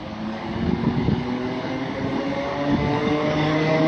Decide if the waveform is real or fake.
fake